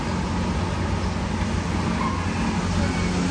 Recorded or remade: recorded